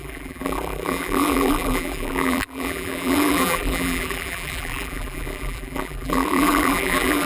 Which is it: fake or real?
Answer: fake